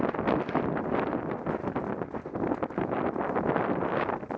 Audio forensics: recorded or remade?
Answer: recorded